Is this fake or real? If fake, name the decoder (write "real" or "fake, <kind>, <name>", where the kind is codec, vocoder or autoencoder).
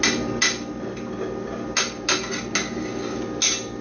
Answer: real